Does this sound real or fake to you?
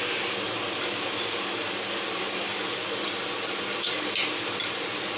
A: real